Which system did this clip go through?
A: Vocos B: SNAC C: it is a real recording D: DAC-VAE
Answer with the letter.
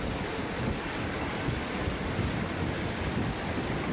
C